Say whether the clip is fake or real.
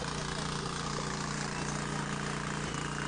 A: real